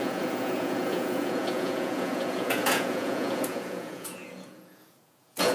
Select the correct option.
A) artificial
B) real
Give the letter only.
A